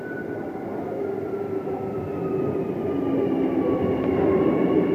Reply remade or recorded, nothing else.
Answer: recorded